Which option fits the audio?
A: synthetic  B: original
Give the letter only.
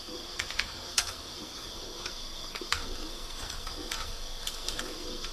A